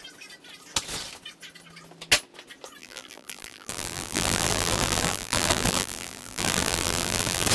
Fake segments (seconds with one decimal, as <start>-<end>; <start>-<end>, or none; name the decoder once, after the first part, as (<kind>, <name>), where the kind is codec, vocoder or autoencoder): 2.8-7.5 (vocoder, BigVGAN v2)